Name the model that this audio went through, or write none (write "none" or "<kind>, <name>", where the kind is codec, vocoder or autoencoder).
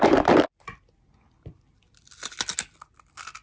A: none